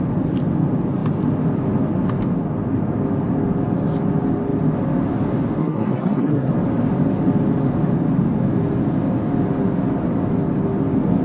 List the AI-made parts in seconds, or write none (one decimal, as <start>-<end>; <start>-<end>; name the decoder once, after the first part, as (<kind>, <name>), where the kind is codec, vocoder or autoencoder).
5.6-6.5 (codec, SNAC)